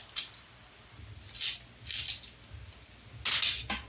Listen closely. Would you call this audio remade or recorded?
recorded